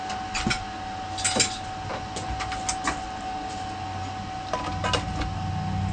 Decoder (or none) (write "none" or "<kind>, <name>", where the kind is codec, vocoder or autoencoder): none